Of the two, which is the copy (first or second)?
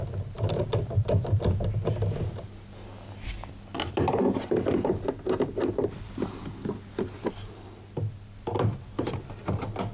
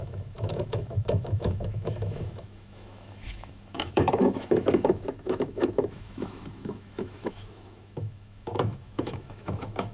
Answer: second